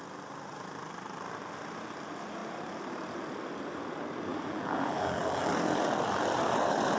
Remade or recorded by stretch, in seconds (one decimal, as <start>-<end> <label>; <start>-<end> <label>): 0.0-4.3 recorded; 4.3-5.5 remade; 5.5-7.0 recorded